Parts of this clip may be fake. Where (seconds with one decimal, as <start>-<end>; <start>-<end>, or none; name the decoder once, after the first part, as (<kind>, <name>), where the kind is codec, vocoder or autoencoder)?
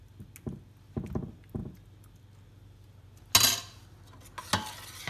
none